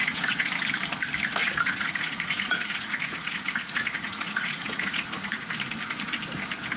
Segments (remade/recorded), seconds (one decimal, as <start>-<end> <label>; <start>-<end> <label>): 0.0-0.5 remade; 0.5-1.4 recorded; 1.4-5.5 remade; 5.5-6.8 recorded